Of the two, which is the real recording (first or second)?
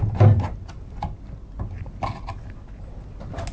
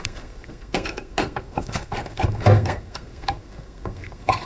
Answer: first